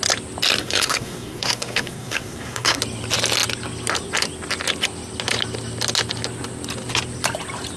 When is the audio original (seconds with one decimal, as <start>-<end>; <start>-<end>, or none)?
0.0-0.6; 2.8-7.8